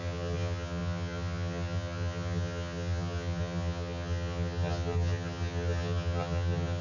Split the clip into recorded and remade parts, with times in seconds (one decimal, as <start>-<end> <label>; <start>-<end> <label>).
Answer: 0.0-6.8 remade